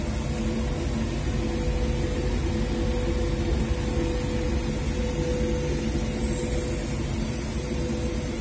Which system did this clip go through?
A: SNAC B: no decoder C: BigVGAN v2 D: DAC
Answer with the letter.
B